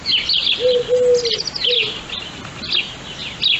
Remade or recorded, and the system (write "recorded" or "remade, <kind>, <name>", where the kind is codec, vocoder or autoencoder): recorded